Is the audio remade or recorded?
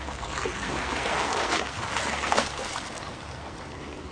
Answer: remade